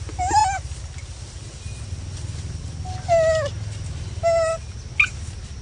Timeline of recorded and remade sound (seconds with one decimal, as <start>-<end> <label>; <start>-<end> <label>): 0.0-5.6 recorded